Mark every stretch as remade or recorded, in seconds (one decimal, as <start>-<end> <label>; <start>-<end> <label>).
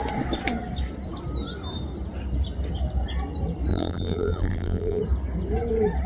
0.0-3.7 recorded; 3.7-5.0 remade; 5.0-6.1 recorded